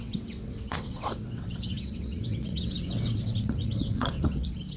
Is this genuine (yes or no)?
no